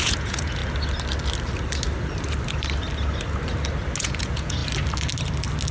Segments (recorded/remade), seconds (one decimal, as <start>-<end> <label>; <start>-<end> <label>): 0.0-0.6 remade; 0.6-4.0 recorded; 4.0-4.6 remade; 4.6-5.7 recorded